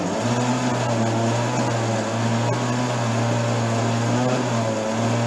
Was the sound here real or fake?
real